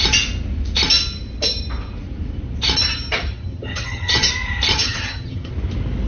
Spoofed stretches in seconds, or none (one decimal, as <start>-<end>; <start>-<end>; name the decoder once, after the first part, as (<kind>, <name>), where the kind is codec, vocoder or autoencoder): 3.3-4.3 (vocoder, HiFi-GAN); 4.7-5.5

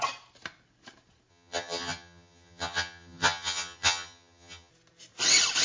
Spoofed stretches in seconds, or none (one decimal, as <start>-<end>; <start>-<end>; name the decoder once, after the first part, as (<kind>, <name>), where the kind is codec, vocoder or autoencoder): 1.3-4.7 (vocoder, HiFi-GAN)